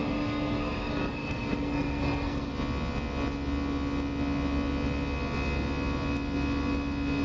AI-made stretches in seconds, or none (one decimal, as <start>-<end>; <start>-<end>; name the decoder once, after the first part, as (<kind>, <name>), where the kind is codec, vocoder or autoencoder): 0.0-2.5 (codec, SNAC)